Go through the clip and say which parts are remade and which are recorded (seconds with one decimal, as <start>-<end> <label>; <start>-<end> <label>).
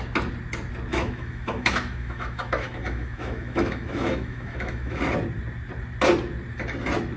0.0-0.9 recorded; 0.9-5.0 remade; 5.0-7.2 recorded